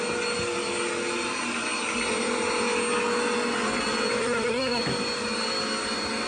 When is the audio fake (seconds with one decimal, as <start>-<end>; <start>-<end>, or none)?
4.2-4.8